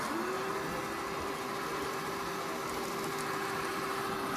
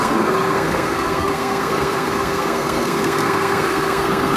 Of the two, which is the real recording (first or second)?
first